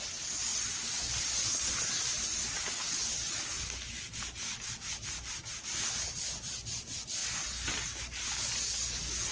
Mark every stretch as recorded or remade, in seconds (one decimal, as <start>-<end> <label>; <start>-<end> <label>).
0.0-9.3 recorded